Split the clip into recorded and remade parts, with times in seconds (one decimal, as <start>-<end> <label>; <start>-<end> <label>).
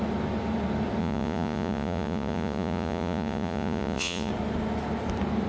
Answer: 0.0-1.0 recorded; 1.0-4.3 remade; 4.3-5.5 recorded